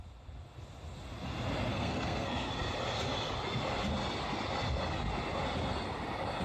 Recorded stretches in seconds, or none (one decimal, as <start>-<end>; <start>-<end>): 0.0-1.7; 2.5-6.4